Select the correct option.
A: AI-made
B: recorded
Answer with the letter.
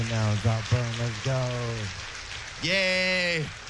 B